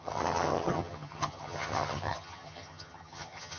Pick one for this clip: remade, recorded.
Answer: remade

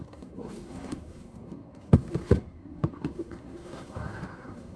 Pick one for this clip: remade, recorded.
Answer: remade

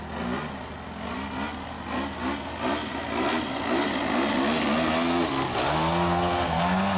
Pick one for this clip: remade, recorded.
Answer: recorded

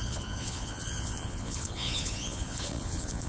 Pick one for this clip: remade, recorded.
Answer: remade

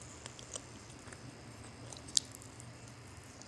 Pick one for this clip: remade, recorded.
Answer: recorded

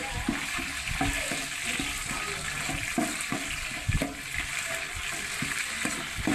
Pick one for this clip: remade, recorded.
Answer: recorded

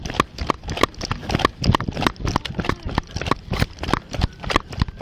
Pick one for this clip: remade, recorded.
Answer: recorded